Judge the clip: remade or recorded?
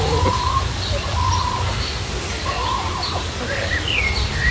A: recorded